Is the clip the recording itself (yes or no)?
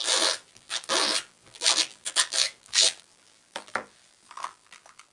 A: no